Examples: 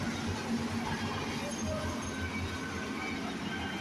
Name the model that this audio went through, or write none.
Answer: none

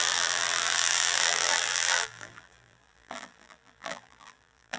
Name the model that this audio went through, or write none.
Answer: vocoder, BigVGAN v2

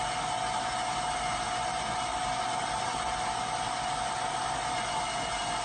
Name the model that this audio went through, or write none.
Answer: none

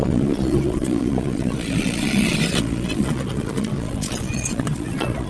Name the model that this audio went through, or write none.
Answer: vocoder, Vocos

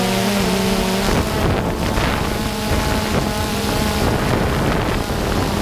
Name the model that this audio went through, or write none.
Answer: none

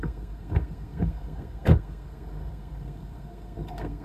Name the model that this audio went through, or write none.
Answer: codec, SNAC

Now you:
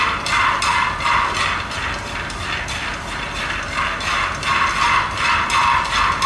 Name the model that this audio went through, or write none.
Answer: none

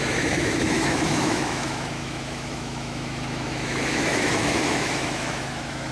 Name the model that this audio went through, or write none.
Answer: autoencoder, DAC-VAE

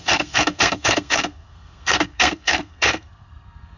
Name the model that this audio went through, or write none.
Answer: codec, SNAC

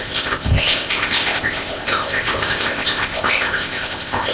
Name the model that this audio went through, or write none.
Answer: codec, ZipCodec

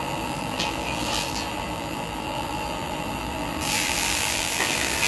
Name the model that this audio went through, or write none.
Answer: vocoder, BigVGAN v2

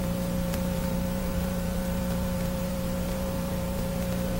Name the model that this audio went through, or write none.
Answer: vocoder, BigVGAN v2